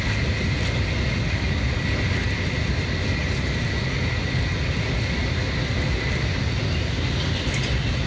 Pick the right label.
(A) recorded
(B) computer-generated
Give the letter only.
A